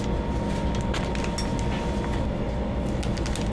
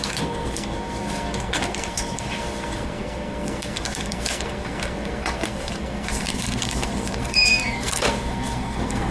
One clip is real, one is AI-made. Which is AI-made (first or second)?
second